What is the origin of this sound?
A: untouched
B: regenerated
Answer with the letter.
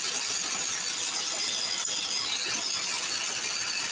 A